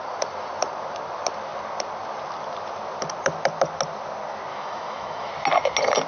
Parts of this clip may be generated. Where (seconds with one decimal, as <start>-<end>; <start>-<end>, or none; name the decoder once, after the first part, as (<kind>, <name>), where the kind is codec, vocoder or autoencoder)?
4.5-5.3 (autoencoder, DAC-VAE)